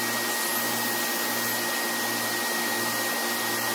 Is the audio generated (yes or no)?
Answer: no